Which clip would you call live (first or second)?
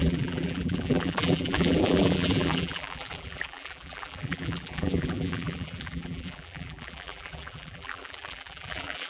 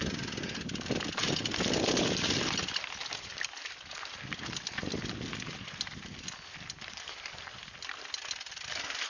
second